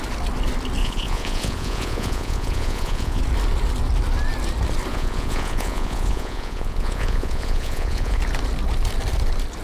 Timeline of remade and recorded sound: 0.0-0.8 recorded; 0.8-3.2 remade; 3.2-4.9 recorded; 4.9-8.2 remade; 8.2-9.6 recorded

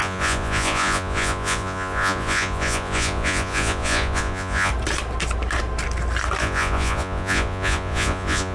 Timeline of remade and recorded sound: 0.0-4.7 remade; 4.7-6.4 recorded; 6.4-8.5 remade

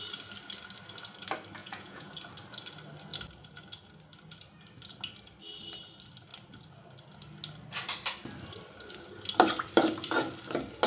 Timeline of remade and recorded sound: 0.0-1.6 recorded; 1.6-2.1 remade; 2.1-10.9 recorded

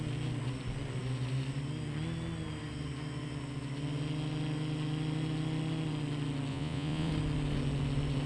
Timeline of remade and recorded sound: 0.0-6.5 recorded; 6.5-7.1 remade; 7.1-8.3 recorded